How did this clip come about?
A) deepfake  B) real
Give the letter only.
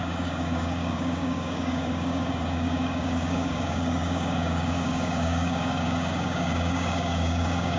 A